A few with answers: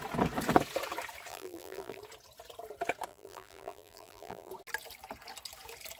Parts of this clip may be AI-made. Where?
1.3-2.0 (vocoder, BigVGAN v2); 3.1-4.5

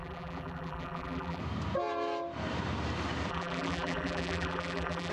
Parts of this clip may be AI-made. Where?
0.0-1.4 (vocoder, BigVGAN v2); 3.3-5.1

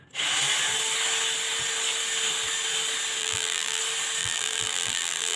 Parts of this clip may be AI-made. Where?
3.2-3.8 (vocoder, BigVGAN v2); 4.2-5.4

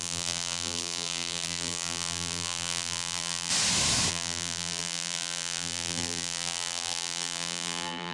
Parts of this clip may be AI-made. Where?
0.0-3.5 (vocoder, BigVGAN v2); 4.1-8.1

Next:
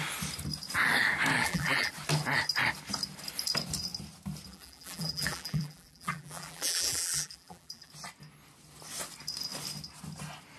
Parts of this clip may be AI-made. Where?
1.4-1.9 (vocoder, BigVGAN v2); 4.5-7.9